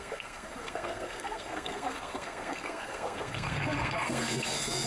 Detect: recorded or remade remade